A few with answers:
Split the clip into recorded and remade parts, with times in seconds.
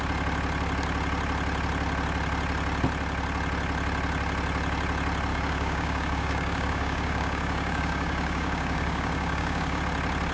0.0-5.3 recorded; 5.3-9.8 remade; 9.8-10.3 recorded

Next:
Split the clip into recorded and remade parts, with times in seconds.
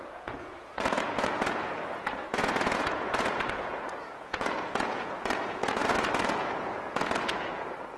0.0-8.0 remade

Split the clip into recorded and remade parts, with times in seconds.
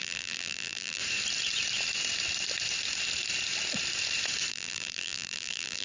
0.0-1.0 remade; 1.0-4.5 recorded; 4.5-5.8 remade